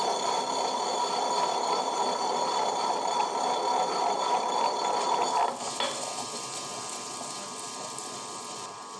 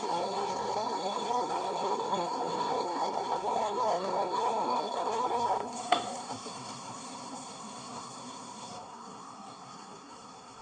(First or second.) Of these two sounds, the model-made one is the second